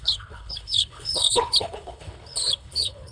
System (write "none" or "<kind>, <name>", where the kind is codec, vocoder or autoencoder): codec, HILCodec